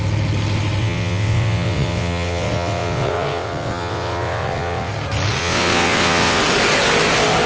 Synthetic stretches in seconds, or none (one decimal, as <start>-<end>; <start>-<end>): 0.8-4.9; 5.4-6.4